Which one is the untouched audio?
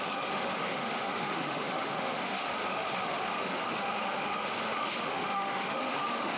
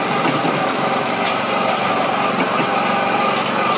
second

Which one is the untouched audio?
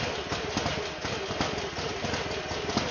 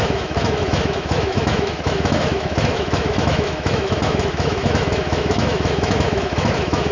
first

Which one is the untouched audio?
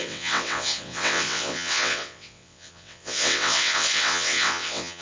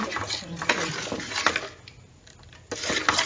second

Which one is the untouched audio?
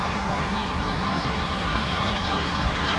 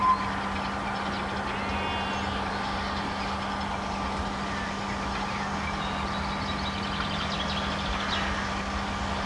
second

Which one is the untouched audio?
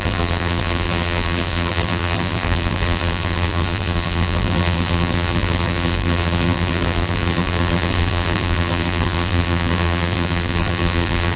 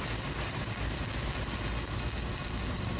second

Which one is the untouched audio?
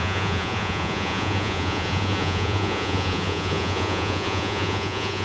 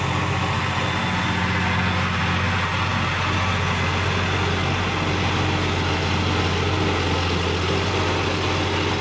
second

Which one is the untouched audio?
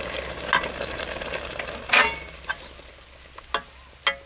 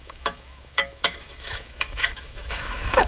first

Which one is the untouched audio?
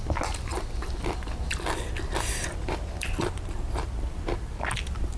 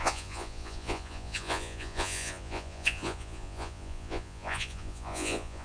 first